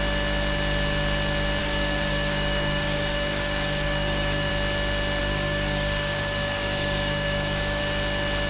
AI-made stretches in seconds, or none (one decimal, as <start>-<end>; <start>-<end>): 1.6-4.5; 5.2-7.8